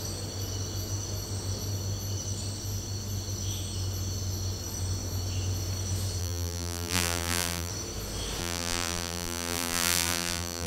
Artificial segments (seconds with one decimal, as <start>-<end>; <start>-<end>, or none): 6.2-7.7; 8.4-10.7